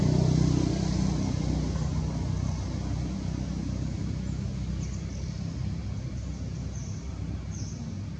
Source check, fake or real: real